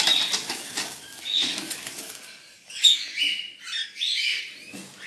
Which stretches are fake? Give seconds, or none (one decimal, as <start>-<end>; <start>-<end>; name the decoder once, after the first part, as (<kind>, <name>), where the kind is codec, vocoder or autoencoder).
0.4-3.2 (codec, DAC); 3.8-4.4